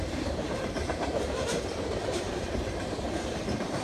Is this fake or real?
fake